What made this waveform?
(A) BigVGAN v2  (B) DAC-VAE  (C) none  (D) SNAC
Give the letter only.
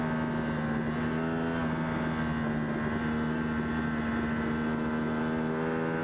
C